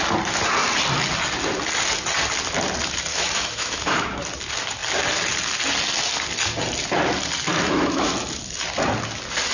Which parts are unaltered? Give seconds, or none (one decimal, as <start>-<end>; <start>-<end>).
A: 0.0-3.1; 4.2-7.5; 8.1-9.5